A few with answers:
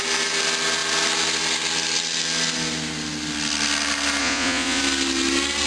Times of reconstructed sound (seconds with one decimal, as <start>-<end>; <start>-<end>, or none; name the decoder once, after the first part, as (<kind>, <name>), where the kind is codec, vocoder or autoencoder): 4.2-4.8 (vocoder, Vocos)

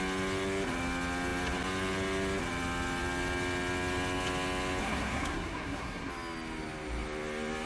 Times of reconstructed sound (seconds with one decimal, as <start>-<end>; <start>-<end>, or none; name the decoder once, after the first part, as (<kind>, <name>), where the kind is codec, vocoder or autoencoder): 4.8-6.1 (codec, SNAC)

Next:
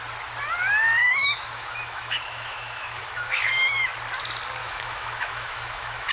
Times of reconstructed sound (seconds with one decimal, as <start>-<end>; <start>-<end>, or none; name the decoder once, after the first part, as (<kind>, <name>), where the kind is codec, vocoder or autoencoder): 1.0-3.9 (autoencoder, DAC-VAE); 4.6-6.1